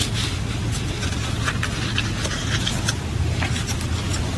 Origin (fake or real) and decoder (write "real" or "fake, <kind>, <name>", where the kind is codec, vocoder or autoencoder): real